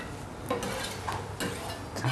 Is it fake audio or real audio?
real